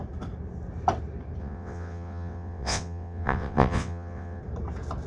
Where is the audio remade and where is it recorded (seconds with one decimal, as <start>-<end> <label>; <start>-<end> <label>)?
0.0-1.4 recorded; 1.4-4.4 remade; 4.4-5.1 recorded